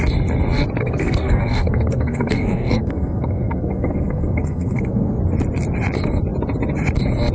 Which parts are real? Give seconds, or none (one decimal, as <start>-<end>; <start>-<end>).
0.0-0.8; 5.2-7.3